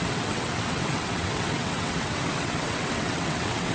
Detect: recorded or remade remade